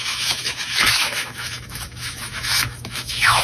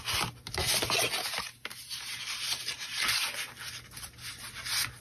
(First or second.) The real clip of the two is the second